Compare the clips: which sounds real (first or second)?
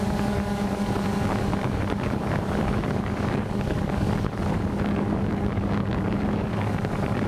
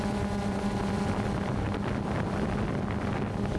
second